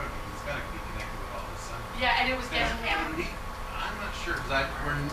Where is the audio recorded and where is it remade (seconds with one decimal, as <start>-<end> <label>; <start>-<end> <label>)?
0.0-2.6 recorded; 2.6-3.4 remade; 3.4-5.1 recorded